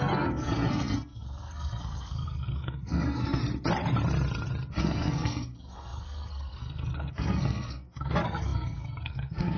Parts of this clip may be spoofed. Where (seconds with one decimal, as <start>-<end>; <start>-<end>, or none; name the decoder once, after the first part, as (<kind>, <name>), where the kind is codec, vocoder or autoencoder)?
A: 0.0-3.4 (codec, SNAC); 4.8-9.6